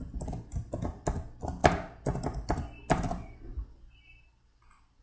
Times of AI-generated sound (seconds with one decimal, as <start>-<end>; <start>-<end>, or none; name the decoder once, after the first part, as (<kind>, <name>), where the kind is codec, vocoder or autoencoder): none